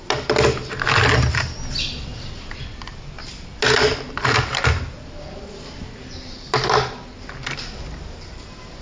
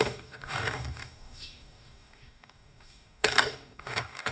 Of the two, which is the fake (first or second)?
second